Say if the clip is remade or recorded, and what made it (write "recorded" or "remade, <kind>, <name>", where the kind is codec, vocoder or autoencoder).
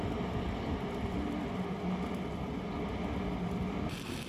recorded